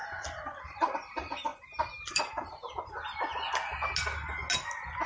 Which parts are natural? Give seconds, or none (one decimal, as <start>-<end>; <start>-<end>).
0.0-0.8; 3.3-5.1